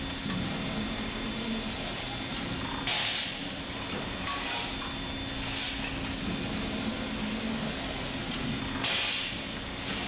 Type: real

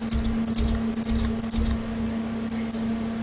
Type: real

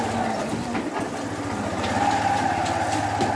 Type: real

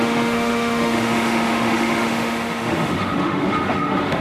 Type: fake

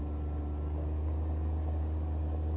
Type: real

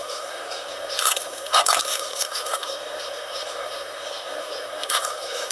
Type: fake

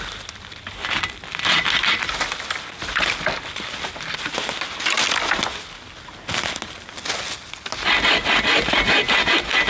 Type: real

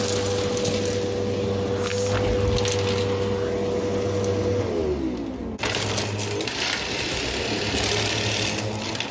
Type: real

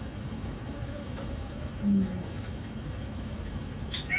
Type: fake